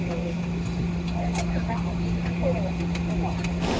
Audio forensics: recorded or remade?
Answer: recorded